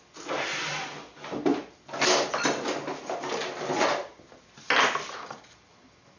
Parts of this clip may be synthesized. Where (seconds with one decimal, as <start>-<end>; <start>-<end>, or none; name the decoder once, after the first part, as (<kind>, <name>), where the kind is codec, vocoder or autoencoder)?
none